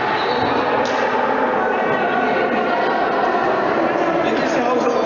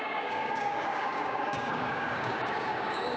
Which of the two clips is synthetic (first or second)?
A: second